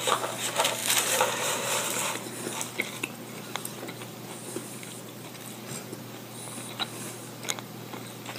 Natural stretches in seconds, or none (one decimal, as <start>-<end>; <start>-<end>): 0.0-0.8; 1.9-4.6; 5.4-8.4